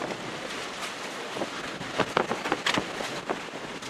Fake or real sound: real